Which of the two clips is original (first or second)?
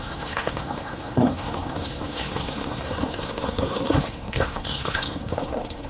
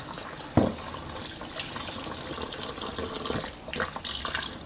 second